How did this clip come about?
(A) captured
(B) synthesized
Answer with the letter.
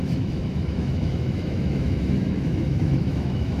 B